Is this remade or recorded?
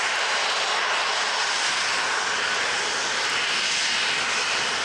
recorded